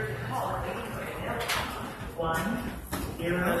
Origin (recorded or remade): recorded